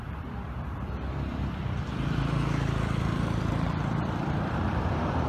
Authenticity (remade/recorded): remade